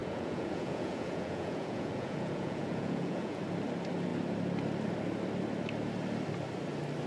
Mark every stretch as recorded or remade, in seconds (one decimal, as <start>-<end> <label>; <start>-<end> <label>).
0.0-3.4 remade; 3.4-7.1 recorded